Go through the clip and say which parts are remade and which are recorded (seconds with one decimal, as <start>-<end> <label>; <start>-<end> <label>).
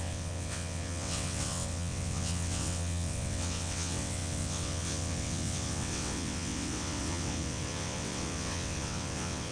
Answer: 0.0-9.5 remade